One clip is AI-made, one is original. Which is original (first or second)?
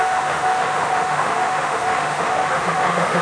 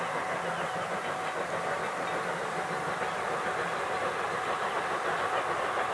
second